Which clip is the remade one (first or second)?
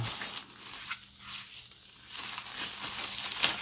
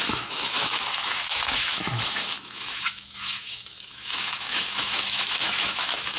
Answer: second